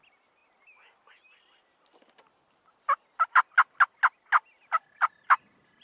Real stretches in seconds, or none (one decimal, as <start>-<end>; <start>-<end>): 0.0-5.8